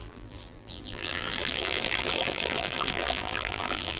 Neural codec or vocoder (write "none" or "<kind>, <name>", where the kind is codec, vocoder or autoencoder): vocoder, BigVGAN v2